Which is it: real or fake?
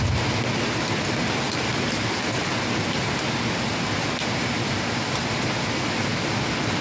real